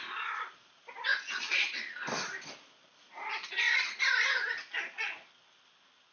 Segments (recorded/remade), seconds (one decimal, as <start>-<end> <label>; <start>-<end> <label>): 0.0-6.1 recorded